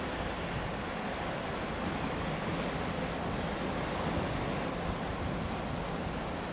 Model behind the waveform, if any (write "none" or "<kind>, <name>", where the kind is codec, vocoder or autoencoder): none